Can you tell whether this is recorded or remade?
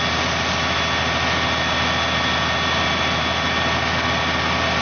recorded